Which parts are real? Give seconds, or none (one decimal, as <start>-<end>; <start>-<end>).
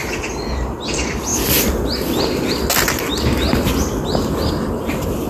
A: 0.5-5.3